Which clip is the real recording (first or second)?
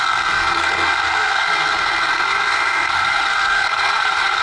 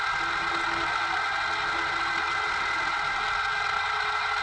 second